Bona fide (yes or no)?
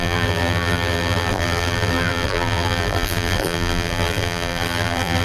no